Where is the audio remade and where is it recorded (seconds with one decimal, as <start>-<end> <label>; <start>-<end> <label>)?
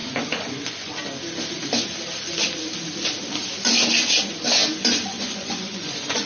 0.0-0.9 remade; 0.9-5.1 recorded; 5.1-6.3 remade